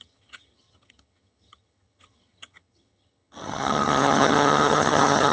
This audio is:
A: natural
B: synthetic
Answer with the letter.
B